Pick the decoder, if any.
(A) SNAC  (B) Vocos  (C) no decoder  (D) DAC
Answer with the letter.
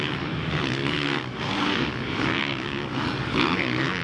D